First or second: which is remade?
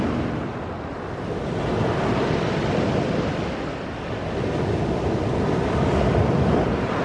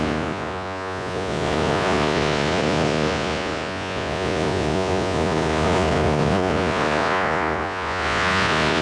second